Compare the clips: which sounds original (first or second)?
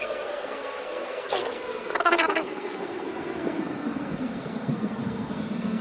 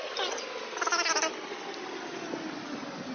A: second